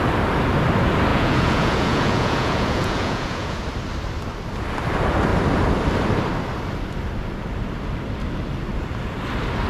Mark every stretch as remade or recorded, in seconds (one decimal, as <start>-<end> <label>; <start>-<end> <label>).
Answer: 0.0-1.1 recorded; 1.1-3.6 remade; 3.6-9.7 recorded